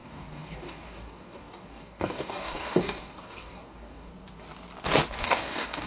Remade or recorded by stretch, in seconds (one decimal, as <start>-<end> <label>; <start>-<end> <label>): 0.0-4.1 remade; 4.1-5.1 recorded; 5.1-5.9 remade